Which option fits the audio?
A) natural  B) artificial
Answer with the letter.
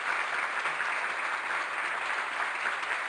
A